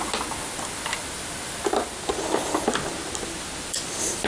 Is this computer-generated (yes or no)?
no